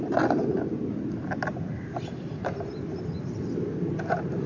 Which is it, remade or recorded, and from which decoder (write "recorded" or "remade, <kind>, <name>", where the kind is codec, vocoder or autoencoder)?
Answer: recorded